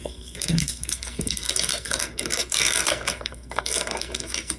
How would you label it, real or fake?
fake